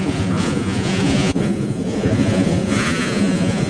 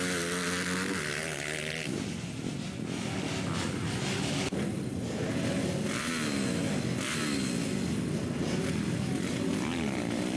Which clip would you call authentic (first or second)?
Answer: second